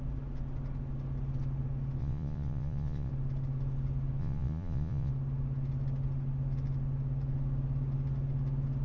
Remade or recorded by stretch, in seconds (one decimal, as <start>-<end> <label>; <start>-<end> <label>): 0.0-2.0 recorded; 2.0-3.1 remade; 3.1-4.2 recorded; 4.2-5.1 remade; 5.1-8.8 recorded